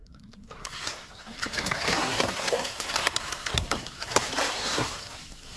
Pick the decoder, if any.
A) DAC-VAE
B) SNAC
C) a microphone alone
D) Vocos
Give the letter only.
B